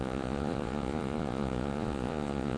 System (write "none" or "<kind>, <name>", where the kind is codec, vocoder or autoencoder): vocoder, Vocos